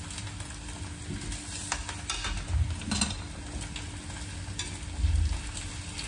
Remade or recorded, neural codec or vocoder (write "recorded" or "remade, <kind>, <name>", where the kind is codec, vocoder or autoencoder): recorded